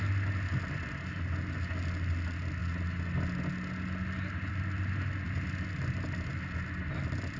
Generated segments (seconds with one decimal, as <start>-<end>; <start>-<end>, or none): none